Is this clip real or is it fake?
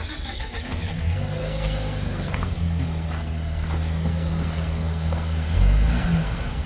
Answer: fake